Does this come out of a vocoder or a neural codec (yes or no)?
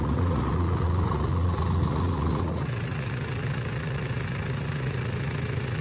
yes